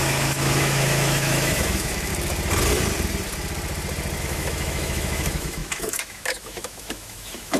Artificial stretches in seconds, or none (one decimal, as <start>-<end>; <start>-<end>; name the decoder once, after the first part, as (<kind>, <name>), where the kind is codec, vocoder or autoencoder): 0.0-2.1 (autoencoder, DAC-VAE); 4.2-7.6